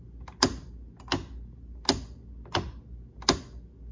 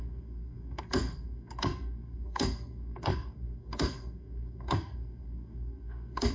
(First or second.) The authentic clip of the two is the first